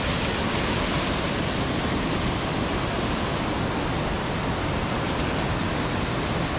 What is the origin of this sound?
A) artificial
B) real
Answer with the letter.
B